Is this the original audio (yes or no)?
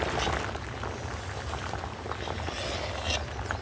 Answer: yes